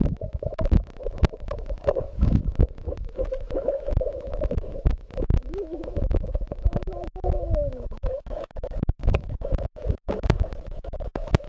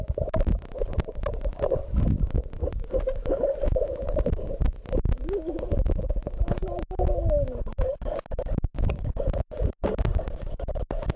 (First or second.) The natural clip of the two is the second